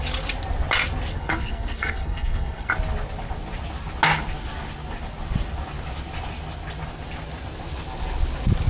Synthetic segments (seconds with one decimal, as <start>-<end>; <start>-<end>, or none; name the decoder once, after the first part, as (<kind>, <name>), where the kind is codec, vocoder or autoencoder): 1.1-2.7 (codec, SNAC)